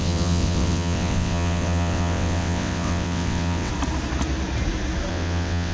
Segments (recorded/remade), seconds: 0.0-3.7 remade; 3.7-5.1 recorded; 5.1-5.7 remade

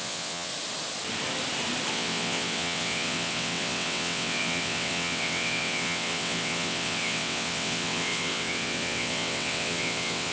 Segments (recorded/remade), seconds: 0.0-0.5 remade; 0.5-1.9 recorded; 1.9-10.3 remade

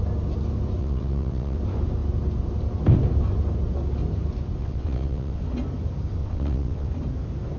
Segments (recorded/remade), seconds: 0.0-0.8 recorded; 0.8-1.6 remade; 1.6-4.6 recorded; 4.6-5.4 remade; 5.4-6.2 recorded; 6.2-6.9 remade; 6.9-7.6 recorded

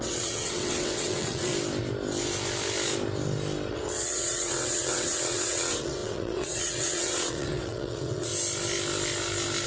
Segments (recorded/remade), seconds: 0.0-1.5 remade; 1.5-3.7 recorded; 3.7-8.3 remade; 8.3-9.7 recorded

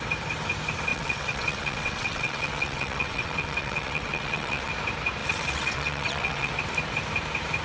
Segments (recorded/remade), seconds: 0.0-0.9 recorded; 0.9-4.7 remade; 4.7-5.2 recorded; 5.2-6.5 remade; 6.5-7.6 recorded

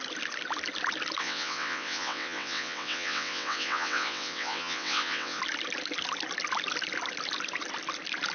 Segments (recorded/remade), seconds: 0.0-1.2 recorded; 1.2-5.4 remade; 5.4-8.3 recorded

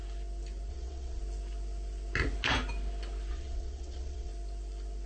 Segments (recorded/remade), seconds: 0.0-0.7 recorded; 0.7-1.2 remade; 1.2-3.3 recorded; 3.3-4.3 remade; 4.3-5.1 recorded